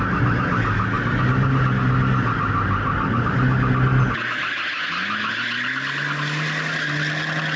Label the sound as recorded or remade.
recorded